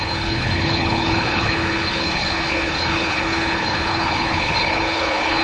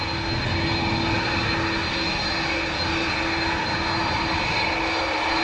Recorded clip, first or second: second